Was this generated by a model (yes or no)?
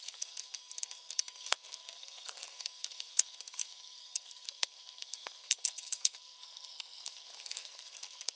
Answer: yes